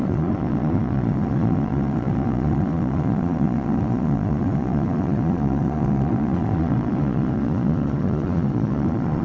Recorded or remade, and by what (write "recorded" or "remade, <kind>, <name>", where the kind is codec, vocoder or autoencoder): remade, vocoder, Vocos